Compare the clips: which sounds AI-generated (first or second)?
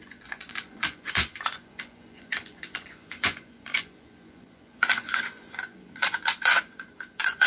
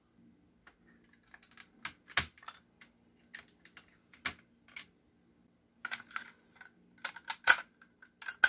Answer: first